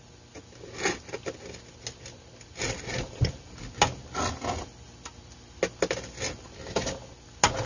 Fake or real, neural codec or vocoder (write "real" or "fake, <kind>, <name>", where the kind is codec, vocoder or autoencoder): real